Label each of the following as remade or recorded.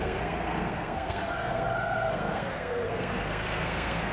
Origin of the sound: remade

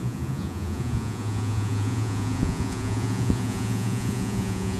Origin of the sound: remade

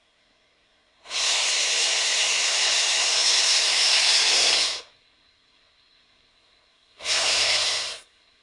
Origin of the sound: remade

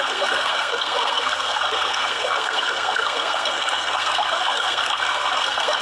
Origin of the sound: remade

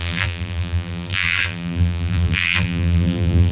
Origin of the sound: remade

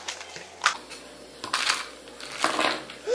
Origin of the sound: recorded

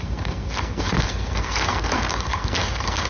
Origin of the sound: remade